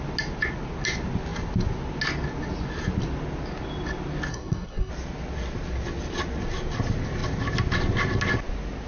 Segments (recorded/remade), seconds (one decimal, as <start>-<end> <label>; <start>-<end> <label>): 0.0-4.3 recorded; 4.3-4.9 remade; 4.9-8.9 recorded